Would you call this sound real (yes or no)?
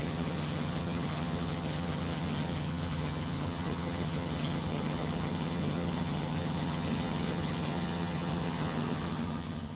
no